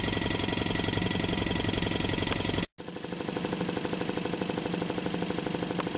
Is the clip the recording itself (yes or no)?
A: yes